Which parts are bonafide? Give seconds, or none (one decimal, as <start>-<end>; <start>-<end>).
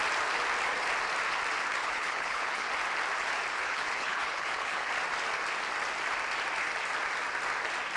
0.0-1.8; 2.7-3.5; 4.9-8.0